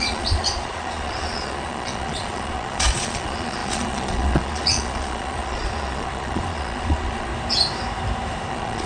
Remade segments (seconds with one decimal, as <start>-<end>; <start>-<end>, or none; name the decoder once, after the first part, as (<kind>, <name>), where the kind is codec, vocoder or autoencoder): 0.0-7.3 (vocoder, Vocos); 8.5-8.9